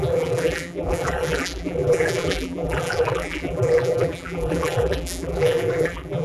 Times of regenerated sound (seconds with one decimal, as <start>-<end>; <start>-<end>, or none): 0.0-6.2